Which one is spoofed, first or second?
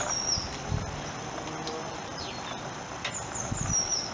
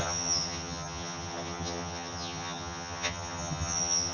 second